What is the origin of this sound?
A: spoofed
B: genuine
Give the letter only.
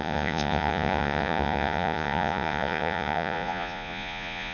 A